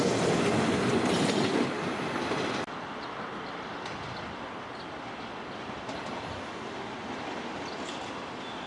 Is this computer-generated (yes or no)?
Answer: no